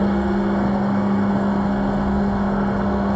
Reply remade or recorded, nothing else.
remade